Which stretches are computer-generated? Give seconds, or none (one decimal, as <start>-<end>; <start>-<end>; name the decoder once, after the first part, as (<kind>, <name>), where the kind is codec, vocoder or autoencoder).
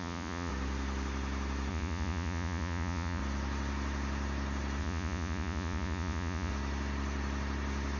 0.0-0.5 (vocoder, Vocos); 1.7-3.2; 4.8-6.5